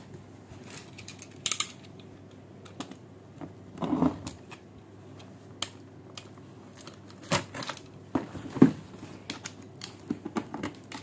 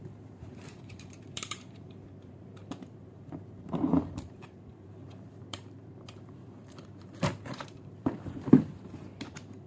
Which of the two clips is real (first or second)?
first